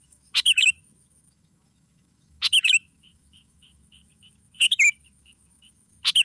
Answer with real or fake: fake